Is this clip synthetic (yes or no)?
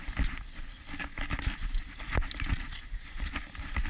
no